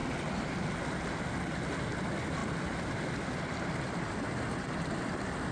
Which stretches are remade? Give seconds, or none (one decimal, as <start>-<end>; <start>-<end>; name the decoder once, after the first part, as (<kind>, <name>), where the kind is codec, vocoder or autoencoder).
none